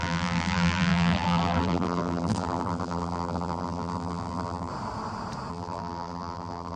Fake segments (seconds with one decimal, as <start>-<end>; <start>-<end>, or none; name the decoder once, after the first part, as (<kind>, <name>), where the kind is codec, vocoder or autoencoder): 0.0-4.7 (vocoder, BigVGAN v2); 5.5-6.8